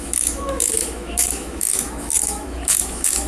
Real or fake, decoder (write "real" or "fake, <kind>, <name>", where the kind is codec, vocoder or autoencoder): fake, autoencoder, DAC-VAE